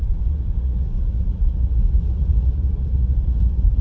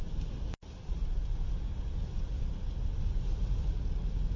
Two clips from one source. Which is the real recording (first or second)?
second